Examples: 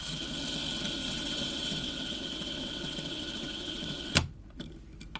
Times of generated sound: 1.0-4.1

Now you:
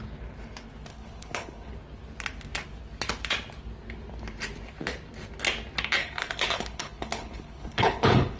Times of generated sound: 0.9-1.7; 6.0-8.4

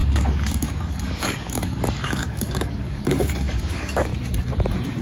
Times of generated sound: 0.0-4.1

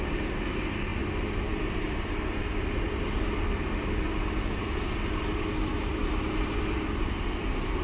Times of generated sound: none